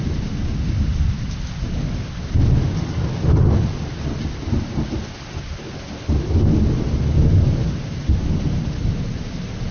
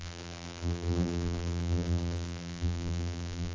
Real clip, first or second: first